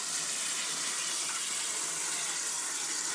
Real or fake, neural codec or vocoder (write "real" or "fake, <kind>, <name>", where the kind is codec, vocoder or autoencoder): real